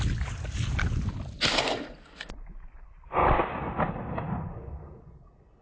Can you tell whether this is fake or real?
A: real